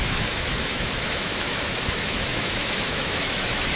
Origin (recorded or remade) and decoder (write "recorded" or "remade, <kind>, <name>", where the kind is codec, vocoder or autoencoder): remade, autoencoder, DAC-VAE